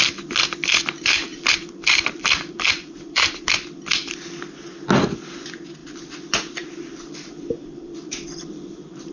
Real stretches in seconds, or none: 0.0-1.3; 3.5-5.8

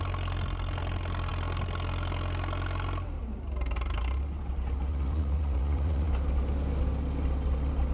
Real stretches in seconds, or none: 0.0-4.9; 6.1-7.9